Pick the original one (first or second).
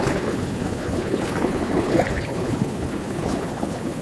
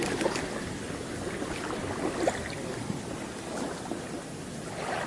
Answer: second